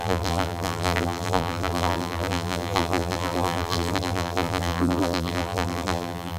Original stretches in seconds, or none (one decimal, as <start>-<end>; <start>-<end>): none